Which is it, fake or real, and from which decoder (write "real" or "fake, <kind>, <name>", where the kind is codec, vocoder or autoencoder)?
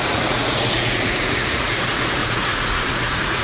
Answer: fake, vocoder, Vocos